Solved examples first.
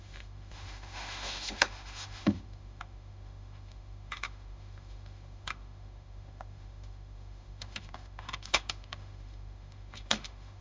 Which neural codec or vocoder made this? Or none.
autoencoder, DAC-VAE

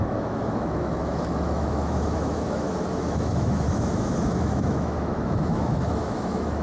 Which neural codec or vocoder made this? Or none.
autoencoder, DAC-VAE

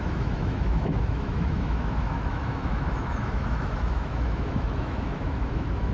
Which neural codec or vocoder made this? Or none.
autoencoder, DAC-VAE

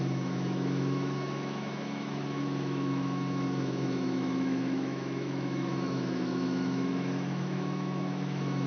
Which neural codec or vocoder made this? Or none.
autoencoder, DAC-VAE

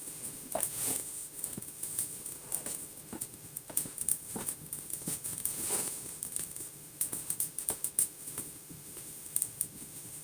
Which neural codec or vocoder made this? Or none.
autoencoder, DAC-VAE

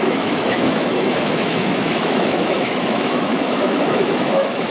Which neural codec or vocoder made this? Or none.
autoencoder, DAC-VAE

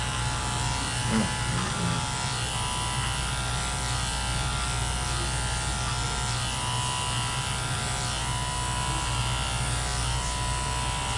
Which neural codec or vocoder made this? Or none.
none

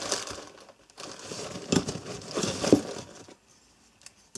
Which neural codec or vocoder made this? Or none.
none